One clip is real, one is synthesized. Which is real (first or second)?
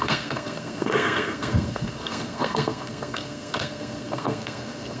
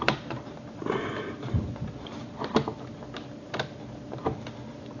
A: second